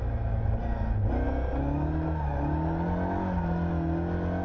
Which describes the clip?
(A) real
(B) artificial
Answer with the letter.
A